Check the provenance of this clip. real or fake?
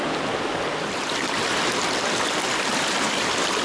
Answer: real